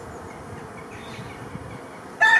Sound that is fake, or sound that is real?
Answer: real